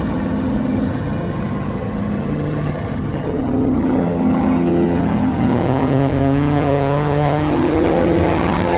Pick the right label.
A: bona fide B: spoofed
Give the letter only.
B